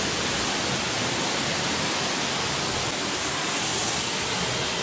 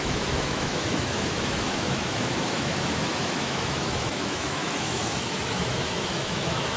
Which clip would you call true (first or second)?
first